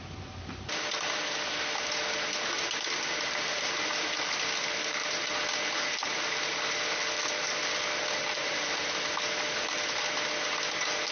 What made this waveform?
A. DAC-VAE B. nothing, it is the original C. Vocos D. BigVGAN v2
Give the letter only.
B